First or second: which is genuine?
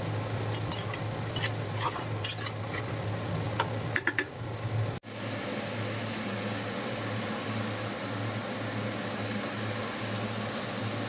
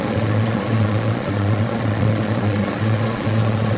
first